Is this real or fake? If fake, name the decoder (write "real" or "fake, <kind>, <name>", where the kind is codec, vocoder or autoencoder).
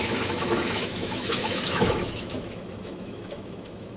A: fake, autoencoder, DAC-VAE